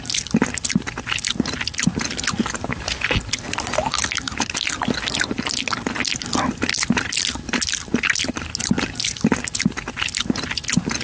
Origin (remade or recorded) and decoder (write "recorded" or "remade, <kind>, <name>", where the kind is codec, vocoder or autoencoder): recorded